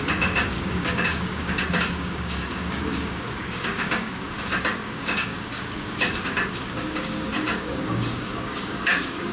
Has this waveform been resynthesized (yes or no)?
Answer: yes